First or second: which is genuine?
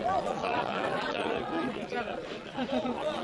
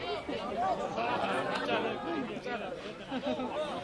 second